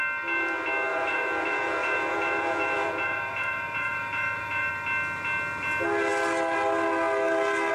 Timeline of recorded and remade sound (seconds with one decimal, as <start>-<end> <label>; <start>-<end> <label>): 0.0-0.9 recorded; 0.9-4.7 remade; 4.7-7.7 recorded